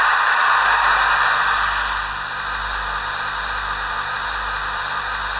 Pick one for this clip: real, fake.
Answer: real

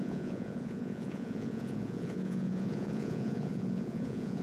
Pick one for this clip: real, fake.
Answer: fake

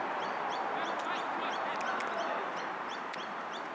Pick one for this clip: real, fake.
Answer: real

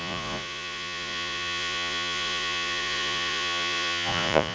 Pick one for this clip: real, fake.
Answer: fake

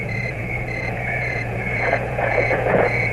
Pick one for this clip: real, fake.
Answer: fake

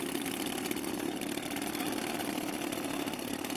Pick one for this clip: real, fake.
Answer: real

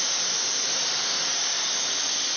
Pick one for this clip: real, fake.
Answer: real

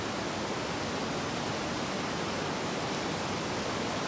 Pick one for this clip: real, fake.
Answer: real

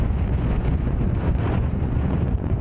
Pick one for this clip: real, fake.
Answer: fake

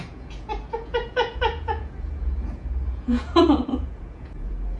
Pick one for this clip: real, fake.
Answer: fake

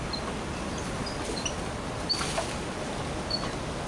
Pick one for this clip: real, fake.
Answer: real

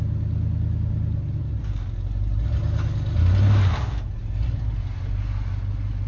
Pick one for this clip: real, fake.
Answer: real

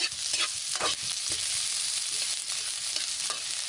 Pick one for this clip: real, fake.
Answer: real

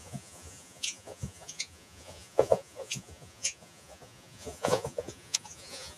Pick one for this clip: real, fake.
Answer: fake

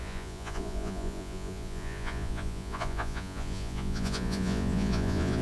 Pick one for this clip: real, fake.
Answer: fake